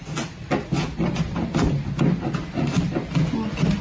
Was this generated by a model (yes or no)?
no